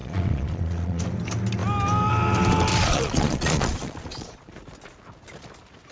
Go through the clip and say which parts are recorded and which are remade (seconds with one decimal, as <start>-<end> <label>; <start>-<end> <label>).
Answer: 0.0-1.0 remade; 1.0-2.7 recorded; 2.7-4.5 remade; 4.5-5.9 recorded